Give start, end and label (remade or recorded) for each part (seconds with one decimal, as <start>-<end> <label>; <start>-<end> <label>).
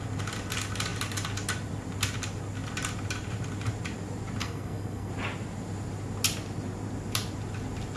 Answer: 0.0-4.4 recorded; 4.4-5.1 remade; 5.1-8.0 recorded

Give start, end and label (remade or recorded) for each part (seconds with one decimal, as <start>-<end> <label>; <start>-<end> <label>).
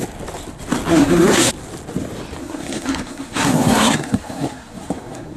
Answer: 0.0-0.9 recorded; 0.9-1.5 remade; 1.5-2.4 recorded; 2.4-5.4 remade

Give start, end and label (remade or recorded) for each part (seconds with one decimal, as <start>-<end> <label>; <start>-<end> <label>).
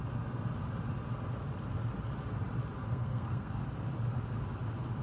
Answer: 0.0-2.8 recorded; 2.8-3.6 remade; 3.6-5.0 recorded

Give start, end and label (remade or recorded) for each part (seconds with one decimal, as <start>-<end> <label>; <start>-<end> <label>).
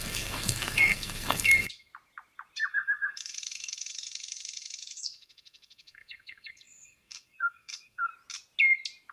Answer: 0.0-1.9 remade; 1.9-2.7 recorded; 2.7-8.1 remade; 8.1-9.1 recorded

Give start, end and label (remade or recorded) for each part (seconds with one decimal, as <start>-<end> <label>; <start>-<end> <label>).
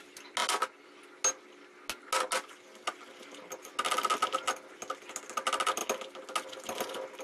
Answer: 0.0-7.2 recorded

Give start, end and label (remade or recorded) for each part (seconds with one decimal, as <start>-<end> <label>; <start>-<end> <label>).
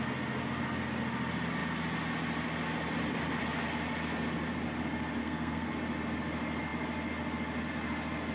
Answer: 0.0-5.2 recorded; 5.2-5.7 remade; 5.7-8.3 recorded